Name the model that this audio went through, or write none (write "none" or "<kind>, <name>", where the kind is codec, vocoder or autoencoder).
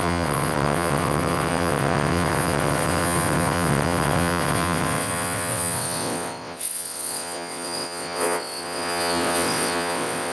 vocoder, WaveNeXt